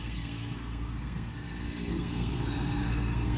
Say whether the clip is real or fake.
fake